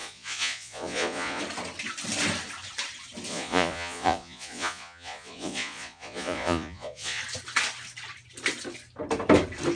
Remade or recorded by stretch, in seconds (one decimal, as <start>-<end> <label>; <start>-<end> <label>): 0.0-1.4 remade; 1.4-3.3 recorded; 3.3-7.2 remade; 7.2-9.8 recorded